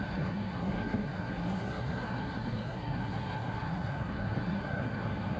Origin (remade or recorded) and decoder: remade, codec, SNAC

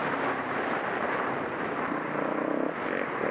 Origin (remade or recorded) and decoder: recorded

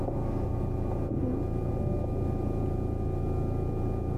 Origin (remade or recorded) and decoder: recorded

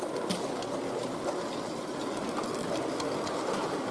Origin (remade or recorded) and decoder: recorded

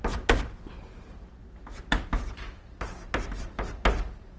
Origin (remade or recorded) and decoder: recorded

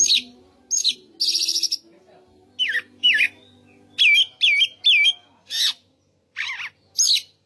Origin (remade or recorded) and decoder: recorded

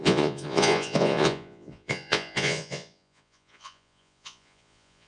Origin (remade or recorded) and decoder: remade, vocoder, Vocos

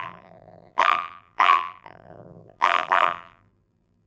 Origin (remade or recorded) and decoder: remade, vocoder, BigVGAN v2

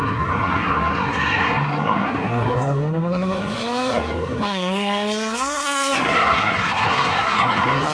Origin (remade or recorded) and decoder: remade, codec, SNAC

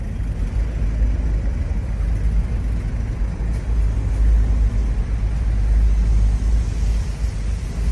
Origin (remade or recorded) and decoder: recorded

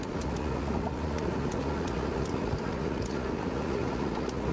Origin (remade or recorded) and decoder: remade, vocoder, Vocos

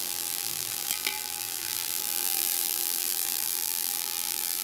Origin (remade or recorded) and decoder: remade, vocoder, BigVGAN v2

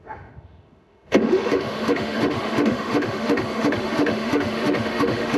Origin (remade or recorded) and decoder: remade, autoencoder, DAC-VAE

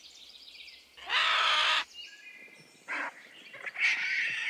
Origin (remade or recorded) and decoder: remade, vocoder, BigVGAN v2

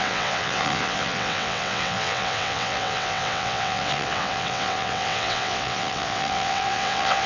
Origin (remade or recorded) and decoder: remade, vocoder, WaveNeXt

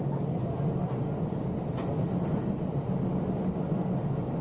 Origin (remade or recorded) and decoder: recorded